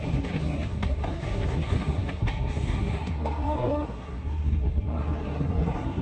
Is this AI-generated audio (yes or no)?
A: yes